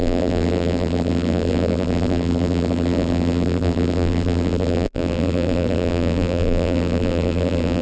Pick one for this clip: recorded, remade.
remade